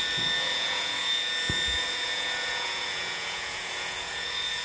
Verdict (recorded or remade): remade